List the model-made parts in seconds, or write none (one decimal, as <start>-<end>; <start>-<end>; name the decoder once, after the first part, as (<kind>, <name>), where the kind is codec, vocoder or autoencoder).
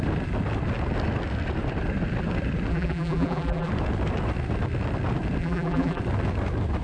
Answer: 2.7-3.7 (vocoder, BigVGAN v2); 5.4-6.0